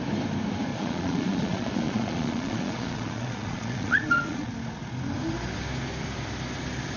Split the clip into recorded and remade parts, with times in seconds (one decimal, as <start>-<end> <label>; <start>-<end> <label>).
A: 0.0-0.7 recorded; 0.7-4.5 remade; 4.5-7.0 recorded